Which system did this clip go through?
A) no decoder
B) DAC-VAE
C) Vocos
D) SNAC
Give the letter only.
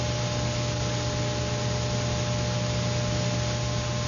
A